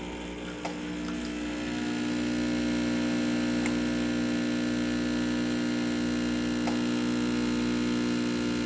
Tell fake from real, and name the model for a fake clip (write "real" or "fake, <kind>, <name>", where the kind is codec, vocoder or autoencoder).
real